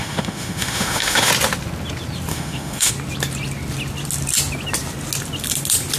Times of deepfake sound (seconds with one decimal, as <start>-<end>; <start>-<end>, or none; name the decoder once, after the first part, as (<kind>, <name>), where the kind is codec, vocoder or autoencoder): 0.0-1.3 (autoencoder, DAC-VAE); 2.3-2.9